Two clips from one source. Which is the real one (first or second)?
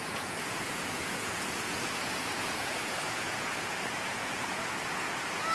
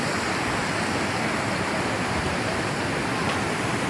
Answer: second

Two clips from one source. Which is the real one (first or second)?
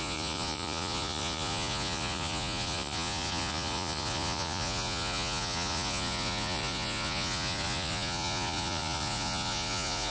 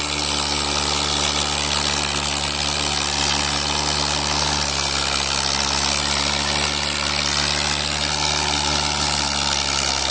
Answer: second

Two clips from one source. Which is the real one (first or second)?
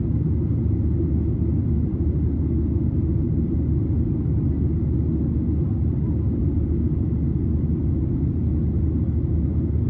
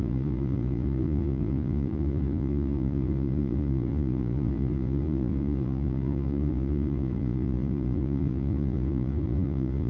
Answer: first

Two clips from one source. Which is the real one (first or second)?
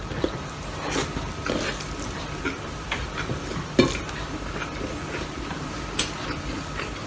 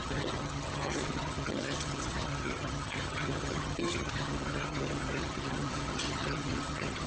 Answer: first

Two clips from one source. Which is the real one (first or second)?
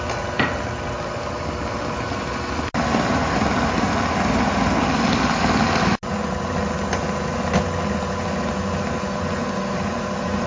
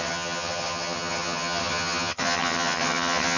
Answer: first